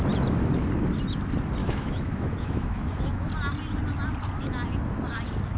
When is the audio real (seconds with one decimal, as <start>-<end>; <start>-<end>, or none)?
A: 0.0-1.6; 3.3-5.6

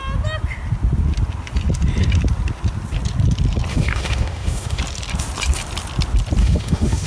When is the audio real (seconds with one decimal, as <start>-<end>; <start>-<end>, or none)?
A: 0.0-3.7; 4.8-6.4

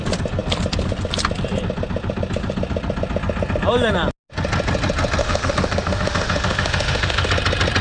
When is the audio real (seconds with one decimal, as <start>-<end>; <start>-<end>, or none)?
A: 0.0-5.2; 7.3-7.8

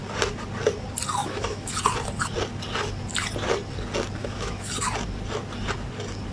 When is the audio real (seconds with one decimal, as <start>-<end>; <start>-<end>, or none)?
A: 0.0-1.2; 1.7-4.2; 4.7-6.3

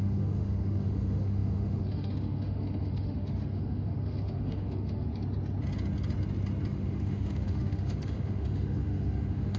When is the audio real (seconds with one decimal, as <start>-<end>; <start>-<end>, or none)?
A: 5.1-6.7

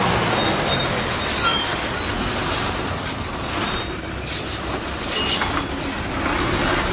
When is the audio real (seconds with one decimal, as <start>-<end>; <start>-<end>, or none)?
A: 0.0-6.9

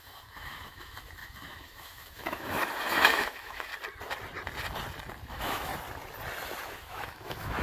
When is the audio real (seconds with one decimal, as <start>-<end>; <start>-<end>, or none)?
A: 3.7-5.3; 5.7-6.7